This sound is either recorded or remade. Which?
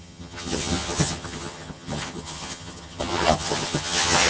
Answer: remade